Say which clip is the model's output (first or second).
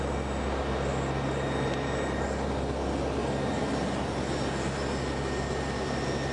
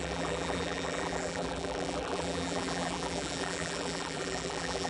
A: second